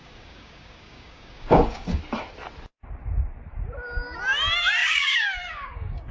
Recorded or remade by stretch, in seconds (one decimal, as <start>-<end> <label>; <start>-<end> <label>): 0.0-2.0 remade; 2.0-4.8 recorded; 4.8-6.1 remade